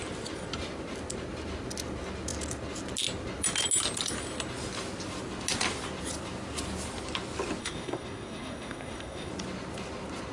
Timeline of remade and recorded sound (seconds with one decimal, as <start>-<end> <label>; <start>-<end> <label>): 0.0-7.6 recorded; 7.6-9.3 remade; 9.3-10.3 recorded